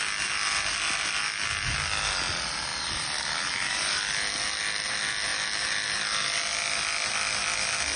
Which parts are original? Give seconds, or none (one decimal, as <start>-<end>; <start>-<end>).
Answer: 0.0-2.7; 4.2-8.0